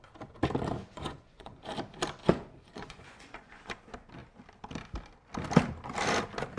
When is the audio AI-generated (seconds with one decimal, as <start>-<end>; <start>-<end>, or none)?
0.8-1.7; 2.2-3.7